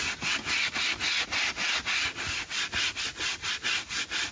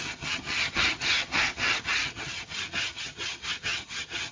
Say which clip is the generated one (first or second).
second